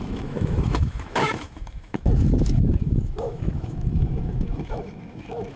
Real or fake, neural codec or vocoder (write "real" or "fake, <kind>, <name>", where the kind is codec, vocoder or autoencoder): fake, autoencoder, DAC-VAE